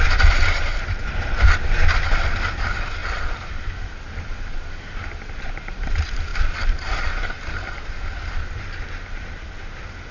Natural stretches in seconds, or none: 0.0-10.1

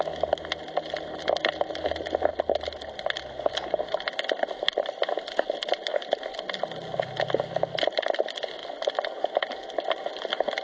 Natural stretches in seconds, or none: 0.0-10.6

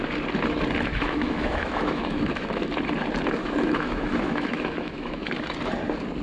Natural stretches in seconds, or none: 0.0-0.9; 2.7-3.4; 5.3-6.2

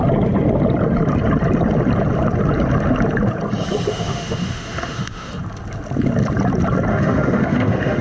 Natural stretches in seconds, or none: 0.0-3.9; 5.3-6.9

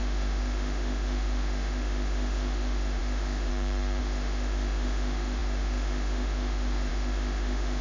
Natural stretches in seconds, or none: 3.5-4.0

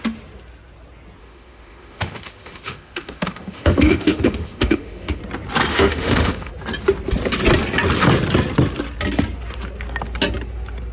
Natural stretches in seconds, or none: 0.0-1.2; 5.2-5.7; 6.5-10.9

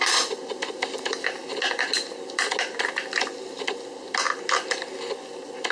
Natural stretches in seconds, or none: 0.0-5.7